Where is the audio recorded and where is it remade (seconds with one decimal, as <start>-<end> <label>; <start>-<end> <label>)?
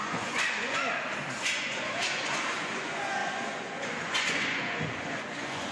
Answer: 0.0-0.8 remade; 0.8-1.4 recorded; 1.4-5.7 remade